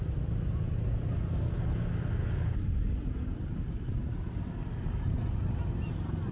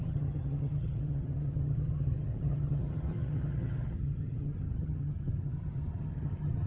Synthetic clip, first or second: second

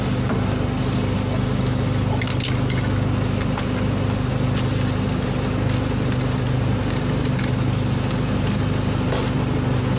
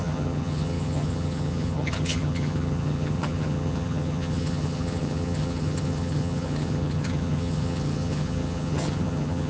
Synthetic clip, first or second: second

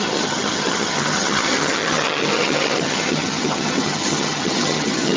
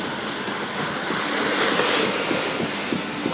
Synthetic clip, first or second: first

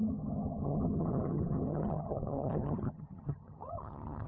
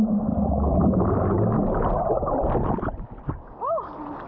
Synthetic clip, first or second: first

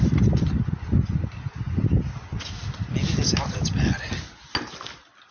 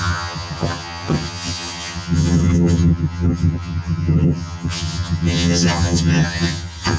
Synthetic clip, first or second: second